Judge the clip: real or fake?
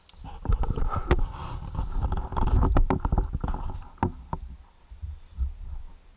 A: real